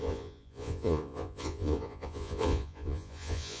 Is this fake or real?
fake